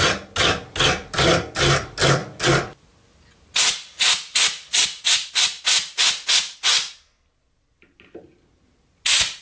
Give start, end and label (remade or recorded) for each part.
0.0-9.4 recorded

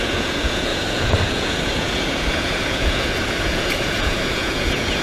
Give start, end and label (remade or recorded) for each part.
0.0-5.0 remade

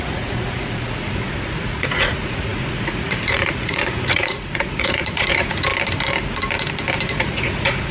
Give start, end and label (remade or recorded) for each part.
0.0-5.7 remade; 5.7-7.1 recorded; 7.1-7.9 remade